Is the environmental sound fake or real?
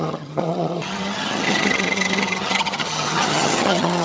fake